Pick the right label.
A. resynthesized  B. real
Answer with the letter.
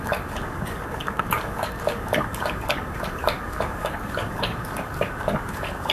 A